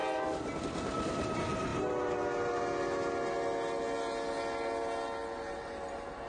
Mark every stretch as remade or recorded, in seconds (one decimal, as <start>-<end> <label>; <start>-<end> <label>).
0.0-6.3 recorded